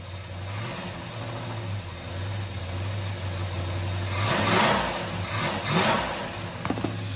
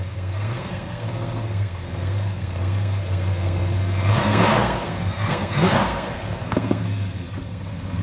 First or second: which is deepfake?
second